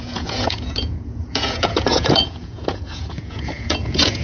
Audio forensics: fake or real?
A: fake